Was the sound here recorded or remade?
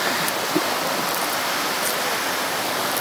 remade